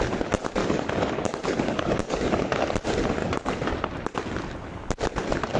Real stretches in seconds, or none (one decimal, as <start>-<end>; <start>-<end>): 0.0-0.6; 2.6-3.2; 3.7-5.6